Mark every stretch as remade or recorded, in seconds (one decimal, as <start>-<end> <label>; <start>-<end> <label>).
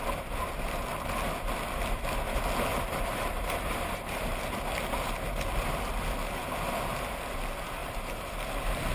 0.0-2.7 recorded; 2.7-4.2 remade; 4.2-7.8 recorded; 7.8-8.3 remade; 8.3-8.9 recorded